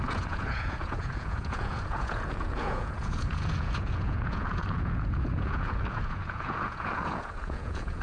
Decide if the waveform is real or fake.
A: fake